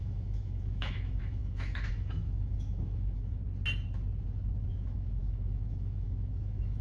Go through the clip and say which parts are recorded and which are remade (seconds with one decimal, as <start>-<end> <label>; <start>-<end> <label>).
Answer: 0.0-3.4 remade; 3.4-4.7 recorded; 4.7-6.8 remade